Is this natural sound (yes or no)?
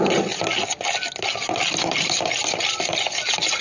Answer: yes